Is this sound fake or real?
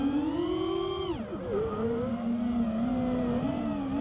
real